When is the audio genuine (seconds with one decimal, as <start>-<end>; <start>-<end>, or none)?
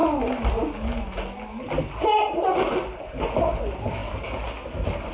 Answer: 0.0-5.1